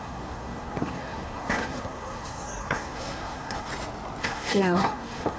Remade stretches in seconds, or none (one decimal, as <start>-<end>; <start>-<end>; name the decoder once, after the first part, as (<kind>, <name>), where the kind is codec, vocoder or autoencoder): 0.0-3.7 (codec, SNAC); 4.2-5.4